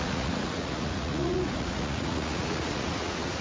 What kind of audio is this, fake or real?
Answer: fake